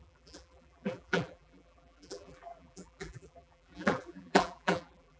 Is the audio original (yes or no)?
no